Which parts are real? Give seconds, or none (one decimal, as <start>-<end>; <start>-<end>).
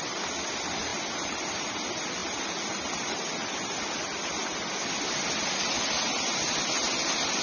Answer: 0.0-7.4